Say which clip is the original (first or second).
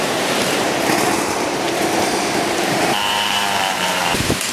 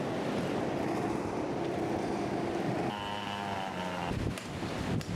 second